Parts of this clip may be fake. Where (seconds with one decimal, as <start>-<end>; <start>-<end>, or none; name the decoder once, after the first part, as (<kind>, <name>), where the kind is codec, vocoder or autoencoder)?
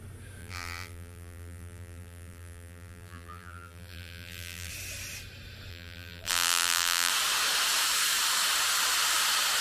0.4-4.7 (vocoder, BigVGAN v2); 5.7-7.1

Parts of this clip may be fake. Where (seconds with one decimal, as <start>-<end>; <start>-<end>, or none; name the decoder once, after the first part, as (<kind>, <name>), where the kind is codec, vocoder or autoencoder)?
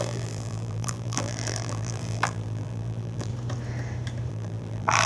0.0-3.3 (vocoder, BigVGAN v2); 4.3-5.1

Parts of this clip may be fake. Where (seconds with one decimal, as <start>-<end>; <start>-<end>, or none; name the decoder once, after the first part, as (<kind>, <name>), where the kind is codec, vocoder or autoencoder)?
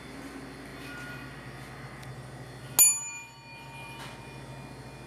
none